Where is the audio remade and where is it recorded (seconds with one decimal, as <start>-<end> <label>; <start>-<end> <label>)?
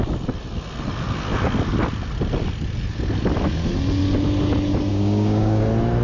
0.0-4.9 recorded; 4.9-5.6 remade; 5.6-6.0 recorded